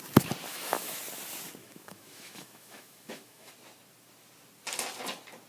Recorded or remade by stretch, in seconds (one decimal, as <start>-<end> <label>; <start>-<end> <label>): 0.0-0.5 recorded; 0.5-1.0 remade; 1.0-1.6 recorded; 1.6-3.5 remade; 3.5-5.5 recorded